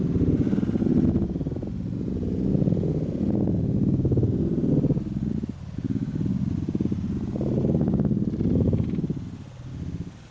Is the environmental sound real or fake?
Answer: real